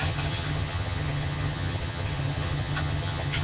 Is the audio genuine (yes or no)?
no